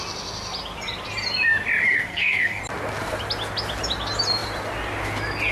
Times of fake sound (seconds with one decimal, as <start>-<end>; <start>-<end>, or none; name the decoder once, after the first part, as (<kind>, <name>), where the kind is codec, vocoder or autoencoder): 1.9-2.6 (codec, SNAC)